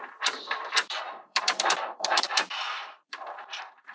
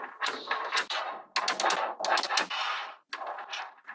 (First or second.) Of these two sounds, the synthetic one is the first